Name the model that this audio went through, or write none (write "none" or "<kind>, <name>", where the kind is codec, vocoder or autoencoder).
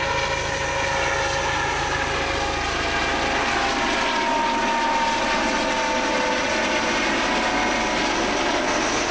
none